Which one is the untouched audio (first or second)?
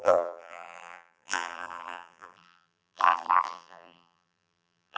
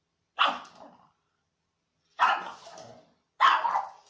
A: second